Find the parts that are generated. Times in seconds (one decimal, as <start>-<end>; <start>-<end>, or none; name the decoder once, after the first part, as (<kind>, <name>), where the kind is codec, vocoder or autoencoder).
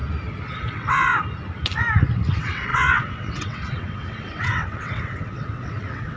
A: 0.6-1.1 (vocoder, WaveNeXt); 2.3-6.2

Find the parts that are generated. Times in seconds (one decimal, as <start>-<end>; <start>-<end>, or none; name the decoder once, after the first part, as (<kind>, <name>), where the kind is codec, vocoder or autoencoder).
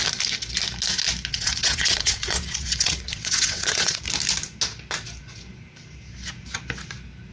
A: 1.3-4.0 (vocoder, WaveNeXt)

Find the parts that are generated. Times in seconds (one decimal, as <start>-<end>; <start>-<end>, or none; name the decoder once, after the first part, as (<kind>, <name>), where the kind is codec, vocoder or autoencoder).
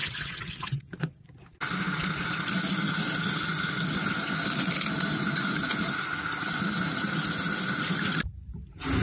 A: 0.0-0.8 (vocoder, WaveNeXt)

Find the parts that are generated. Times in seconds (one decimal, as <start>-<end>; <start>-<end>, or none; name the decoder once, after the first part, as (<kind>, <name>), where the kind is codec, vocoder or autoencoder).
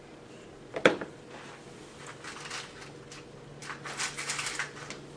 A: none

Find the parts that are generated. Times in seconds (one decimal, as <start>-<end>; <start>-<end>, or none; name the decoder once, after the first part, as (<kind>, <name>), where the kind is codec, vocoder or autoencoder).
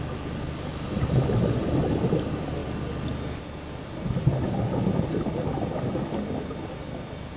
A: none